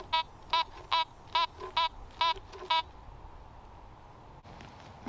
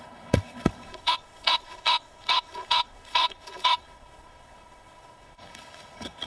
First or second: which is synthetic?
second